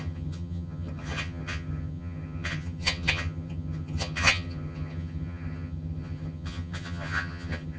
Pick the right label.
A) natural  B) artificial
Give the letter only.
B